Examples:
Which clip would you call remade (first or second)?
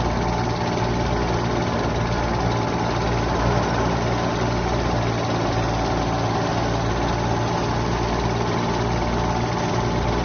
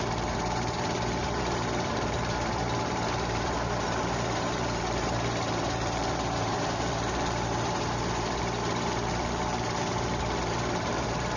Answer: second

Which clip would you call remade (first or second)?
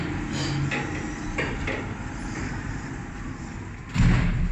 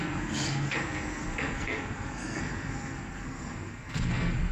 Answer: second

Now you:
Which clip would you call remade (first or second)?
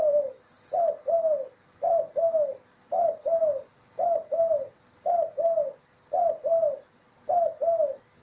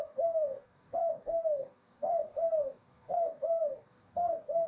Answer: second